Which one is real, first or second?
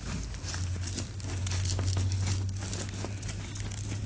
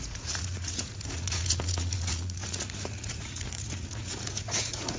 first